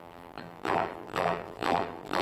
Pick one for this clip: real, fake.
fake